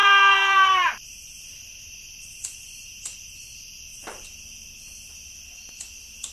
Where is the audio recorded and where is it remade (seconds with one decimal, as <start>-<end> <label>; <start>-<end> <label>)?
0.0-3.5 remade; 3.5-3.9 recorded; 3.9-4.4 remade; 4.4-6.3 recorded